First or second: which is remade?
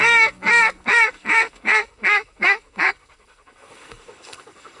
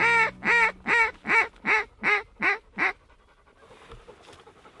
first